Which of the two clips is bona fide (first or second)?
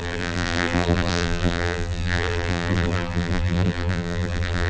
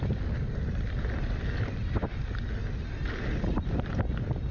second